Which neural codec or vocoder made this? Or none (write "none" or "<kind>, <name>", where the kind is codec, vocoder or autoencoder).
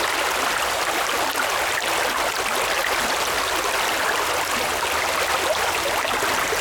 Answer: none